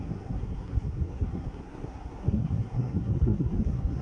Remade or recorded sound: remade